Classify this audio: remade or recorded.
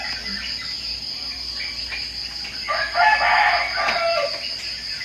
recorded